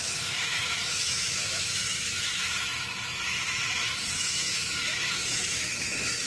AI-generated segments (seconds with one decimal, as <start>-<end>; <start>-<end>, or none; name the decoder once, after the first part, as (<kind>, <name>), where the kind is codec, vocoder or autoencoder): 0.0-6.3 (autoencoder, DAC-VAE)